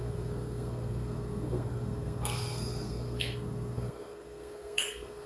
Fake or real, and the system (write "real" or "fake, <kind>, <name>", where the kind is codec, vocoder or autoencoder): fake, codec, SNAC